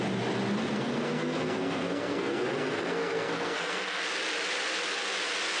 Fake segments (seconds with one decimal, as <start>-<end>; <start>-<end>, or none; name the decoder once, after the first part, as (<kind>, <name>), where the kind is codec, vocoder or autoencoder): 0.6-4.0 (codec, SNAC)

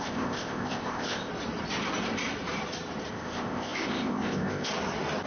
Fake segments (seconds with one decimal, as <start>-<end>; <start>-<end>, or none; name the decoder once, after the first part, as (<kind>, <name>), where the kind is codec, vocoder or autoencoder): 0.0-1.3 (codec, ZipCodec); 3.1-4.7

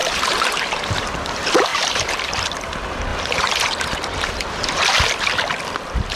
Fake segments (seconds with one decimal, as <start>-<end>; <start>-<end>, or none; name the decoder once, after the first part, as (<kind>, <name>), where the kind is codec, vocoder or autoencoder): 0.0-0.6 (vocoder, BigVGAN v2); 1.7-2.3; 3.1-4.8